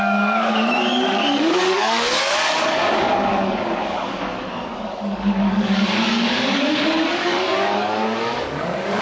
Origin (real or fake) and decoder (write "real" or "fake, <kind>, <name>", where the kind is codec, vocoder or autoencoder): fake, codec, DAC